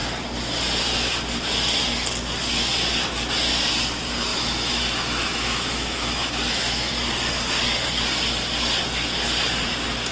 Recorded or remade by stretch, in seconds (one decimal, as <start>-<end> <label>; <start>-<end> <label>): 0.0-4.3 recorded; 4.3-6.9 remade; 6.9-10.1 recorded